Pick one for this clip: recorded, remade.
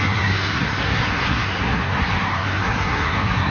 remade